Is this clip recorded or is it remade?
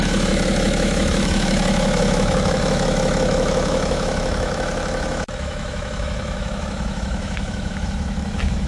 remade